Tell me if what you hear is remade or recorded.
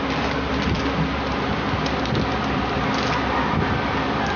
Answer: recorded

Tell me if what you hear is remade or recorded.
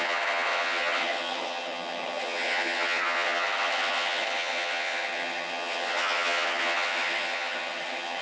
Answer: remade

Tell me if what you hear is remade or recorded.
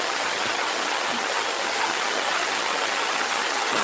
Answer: remade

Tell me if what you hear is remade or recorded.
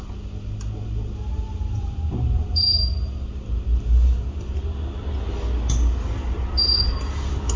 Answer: recorded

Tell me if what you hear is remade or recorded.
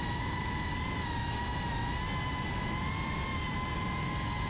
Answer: recorded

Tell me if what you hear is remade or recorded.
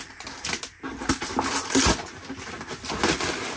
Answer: recorded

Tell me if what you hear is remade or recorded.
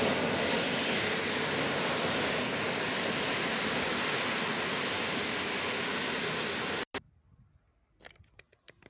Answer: recorded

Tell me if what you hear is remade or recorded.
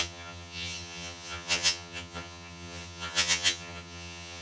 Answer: remade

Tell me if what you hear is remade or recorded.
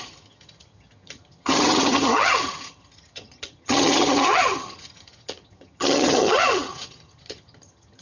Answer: remade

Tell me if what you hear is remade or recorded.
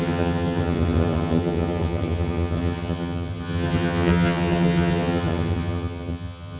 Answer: remade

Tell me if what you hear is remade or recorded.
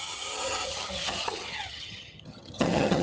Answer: remade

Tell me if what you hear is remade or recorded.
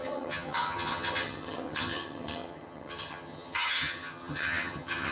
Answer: remade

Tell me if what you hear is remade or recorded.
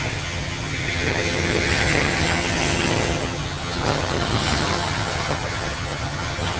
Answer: remade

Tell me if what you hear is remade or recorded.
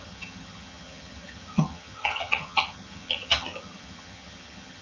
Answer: remade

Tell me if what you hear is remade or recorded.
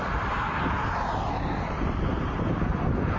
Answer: recorded